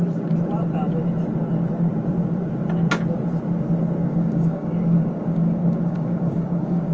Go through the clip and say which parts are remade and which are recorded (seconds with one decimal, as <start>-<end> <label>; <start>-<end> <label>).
0.0-4.0 recorded; 4.0-6.9 remade